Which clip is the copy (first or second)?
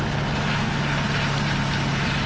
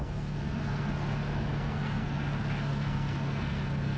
second